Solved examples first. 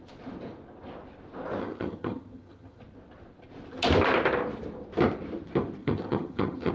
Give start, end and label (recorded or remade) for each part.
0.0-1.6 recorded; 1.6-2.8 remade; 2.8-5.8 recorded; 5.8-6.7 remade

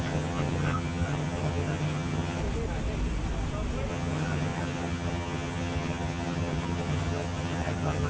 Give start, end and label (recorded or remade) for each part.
0.0-2.4 remade; 2.4-3.9 recorded; 3.9-8.1 remade

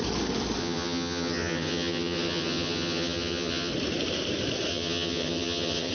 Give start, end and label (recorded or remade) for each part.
0.0-0.6 recorded; 0.6-3.7 remade; 3.7-4.7 recorded; 4.7-5.9 remade